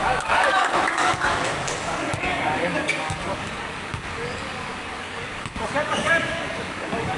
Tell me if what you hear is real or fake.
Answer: fake